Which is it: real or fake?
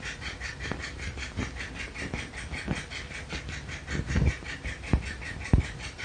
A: real